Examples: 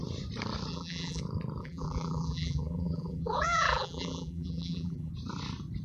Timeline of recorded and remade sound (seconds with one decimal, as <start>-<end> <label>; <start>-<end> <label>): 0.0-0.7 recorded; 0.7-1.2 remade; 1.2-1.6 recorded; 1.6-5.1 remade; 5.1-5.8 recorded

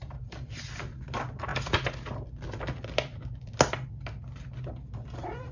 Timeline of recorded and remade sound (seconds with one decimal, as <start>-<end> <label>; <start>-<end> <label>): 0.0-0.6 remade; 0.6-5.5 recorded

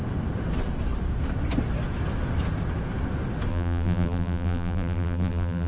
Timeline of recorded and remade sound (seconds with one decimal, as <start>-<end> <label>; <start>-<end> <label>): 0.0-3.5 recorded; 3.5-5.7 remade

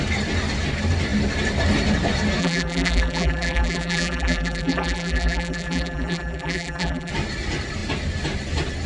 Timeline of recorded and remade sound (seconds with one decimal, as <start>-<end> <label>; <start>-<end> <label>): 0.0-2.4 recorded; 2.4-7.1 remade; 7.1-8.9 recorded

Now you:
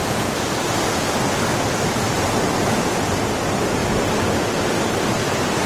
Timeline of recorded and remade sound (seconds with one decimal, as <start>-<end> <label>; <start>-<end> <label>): 0.0-3.4 remade; 3.4-5.7 recorded

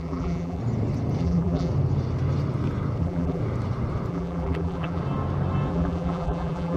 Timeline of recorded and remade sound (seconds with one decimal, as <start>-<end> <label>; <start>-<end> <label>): 0.0-0.6 remade; 0.6-1.2 recorded; 1.2-1.7 remade; 1.7-3.0 recorded; 3.0-3.4 remade; 3.4-4.1 recorded; 4.1-5.0 remade; 5.0-5.7 recorded; 5.7-6.8 remade

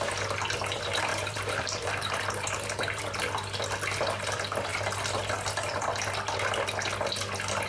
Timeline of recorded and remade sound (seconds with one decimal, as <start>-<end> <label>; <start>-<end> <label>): 0.0-1.1 recorded; 1.1-3.0 remade; 3.0-7.7 recorded